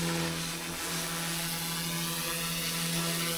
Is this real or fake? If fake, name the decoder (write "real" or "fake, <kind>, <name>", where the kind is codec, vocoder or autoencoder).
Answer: real